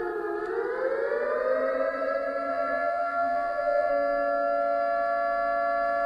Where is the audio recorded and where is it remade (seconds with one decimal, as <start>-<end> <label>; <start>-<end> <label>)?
0.0-2.5 recorded; 2.5-3.9 remade; 3.9-6.1 recorded